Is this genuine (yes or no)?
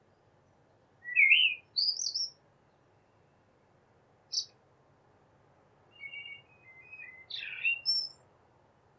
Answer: yes